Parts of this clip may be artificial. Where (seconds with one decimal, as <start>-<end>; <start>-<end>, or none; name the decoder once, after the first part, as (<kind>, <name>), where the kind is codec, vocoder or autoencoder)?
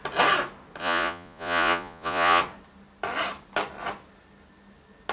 0.8-2.4 (vocoder, Vocos)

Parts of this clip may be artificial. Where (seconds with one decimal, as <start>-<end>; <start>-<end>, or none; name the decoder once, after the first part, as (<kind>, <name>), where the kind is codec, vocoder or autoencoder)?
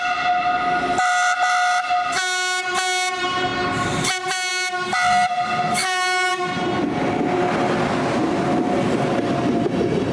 none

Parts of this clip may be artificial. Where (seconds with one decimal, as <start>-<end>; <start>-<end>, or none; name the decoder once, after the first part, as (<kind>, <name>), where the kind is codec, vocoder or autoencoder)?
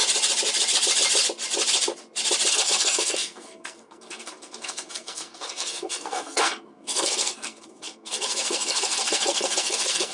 2.5-10.1 (codec, SNAC)